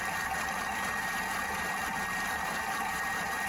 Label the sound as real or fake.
fake